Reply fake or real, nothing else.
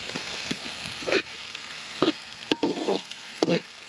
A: fake